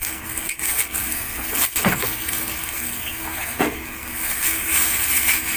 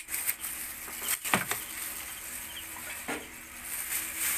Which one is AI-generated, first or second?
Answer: first